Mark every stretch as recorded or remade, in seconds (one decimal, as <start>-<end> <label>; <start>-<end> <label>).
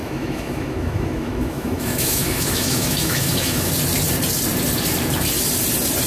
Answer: 0.0-3.7 remade; 3.7-6.1 recorded